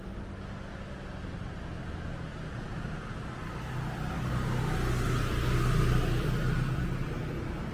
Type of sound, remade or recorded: recorded